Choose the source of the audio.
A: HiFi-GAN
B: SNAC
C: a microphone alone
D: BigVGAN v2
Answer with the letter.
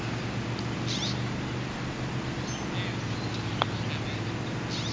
C